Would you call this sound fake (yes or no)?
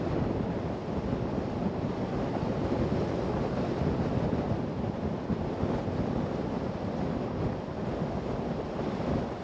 no